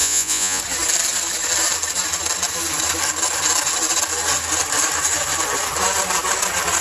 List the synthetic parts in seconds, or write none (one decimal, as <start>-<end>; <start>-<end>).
0.0-0.6